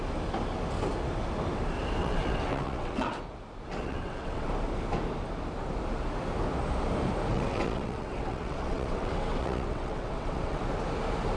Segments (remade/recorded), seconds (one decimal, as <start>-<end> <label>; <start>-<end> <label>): 0.0-2.0 recorded; 2.0-3.2 remade; 3.2-3.8 recorded; 3.8-4.5 remade; 4.5-7.3 recorded; 7.3-10.6 remade; 10.6-11.4 recorded